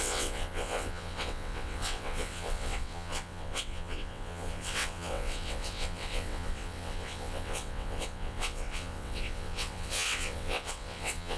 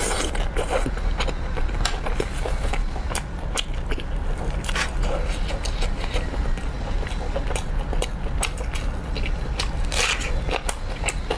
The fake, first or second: first